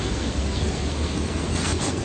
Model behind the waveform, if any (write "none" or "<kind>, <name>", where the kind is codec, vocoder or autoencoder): codec, SNAC